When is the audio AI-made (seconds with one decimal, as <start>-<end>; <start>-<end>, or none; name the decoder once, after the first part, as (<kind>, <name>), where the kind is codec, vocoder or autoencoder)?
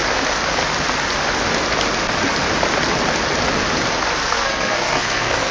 4.2-5.5 (codec, SNAC)